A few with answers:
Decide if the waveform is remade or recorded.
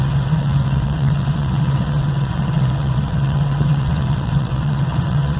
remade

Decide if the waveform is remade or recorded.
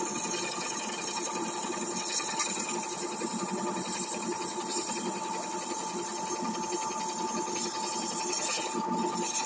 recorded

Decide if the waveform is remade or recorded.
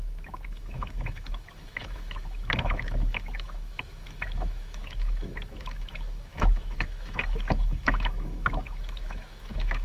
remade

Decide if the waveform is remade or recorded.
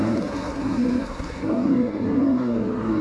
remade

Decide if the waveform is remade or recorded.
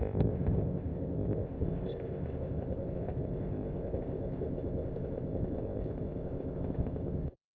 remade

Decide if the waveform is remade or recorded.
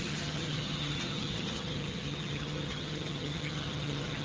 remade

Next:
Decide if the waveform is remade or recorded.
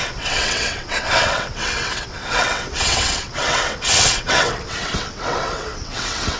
remade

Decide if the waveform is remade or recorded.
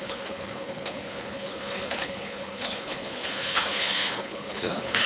remade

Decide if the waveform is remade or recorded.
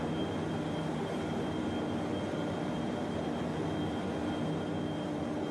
recorded